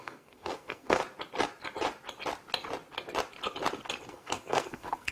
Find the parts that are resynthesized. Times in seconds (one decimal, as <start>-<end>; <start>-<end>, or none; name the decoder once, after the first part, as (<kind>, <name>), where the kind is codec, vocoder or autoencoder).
0.0-1.0 (codec, SNAC); 4.1-5.1